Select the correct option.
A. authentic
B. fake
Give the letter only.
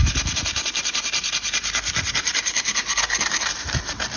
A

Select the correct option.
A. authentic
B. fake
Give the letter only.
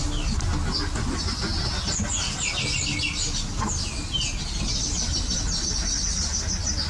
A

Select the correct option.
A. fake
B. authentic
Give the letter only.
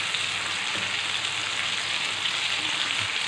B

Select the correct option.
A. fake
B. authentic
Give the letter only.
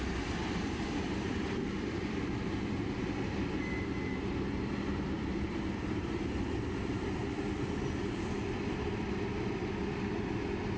A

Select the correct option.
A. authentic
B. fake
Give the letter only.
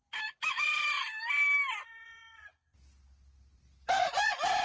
A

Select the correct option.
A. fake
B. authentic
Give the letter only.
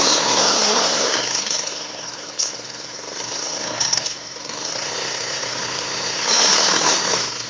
A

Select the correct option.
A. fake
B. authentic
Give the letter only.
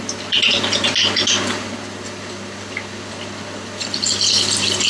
B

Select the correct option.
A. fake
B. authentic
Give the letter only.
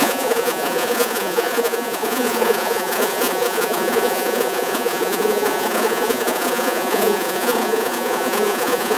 A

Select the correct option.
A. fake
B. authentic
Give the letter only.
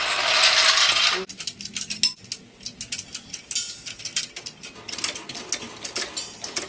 B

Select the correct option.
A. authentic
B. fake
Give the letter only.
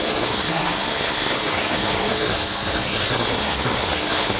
B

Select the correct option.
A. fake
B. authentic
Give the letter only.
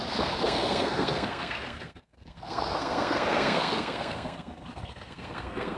A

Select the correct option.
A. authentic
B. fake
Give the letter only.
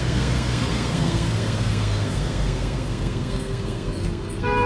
B